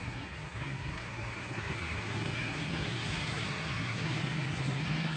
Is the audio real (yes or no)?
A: no